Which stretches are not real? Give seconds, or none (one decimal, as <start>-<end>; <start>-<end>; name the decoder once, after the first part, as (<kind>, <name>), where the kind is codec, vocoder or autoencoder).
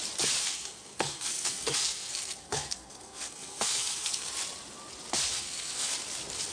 0.4-4.3 (codec, SNAC); 5.3-5.9